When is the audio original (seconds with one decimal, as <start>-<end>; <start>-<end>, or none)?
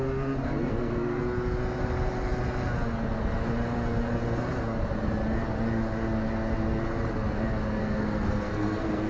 0.0-0.6; 1.2-7.8